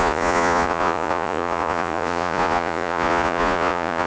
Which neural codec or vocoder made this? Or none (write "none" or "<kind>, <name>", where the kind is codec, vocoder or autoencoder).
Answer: vocoder, Vocos